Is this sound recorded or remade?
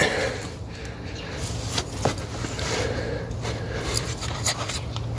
recorded